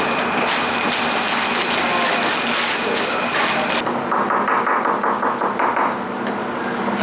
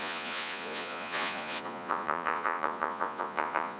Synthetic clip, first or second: second